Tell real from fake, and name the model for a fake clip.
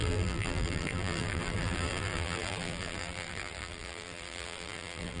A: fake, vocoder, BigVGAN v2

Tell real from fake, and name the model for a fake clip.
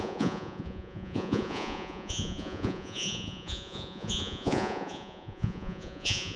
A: fake, vocoder, Vocos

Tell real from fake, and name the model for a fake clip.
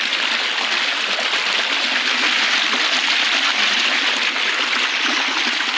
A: real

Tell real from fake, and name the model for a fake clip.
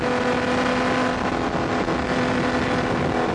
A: real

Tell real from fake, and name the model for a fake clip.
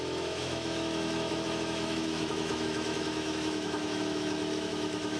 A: fake, autoencoder, DAC-VAE